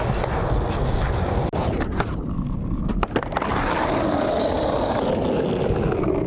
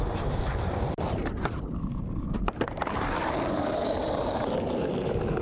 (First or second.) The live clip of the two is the first